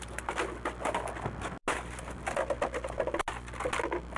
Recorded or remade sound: recorded